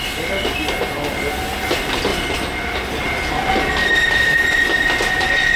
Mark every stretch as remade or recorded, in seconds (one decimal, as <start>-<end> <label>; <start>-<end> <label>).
0.0-2.1 recorded; 2.1-3.3 remade; 3.3-3.8 recorded; 3.8-4.6 remade; 4.6-5.6 recorded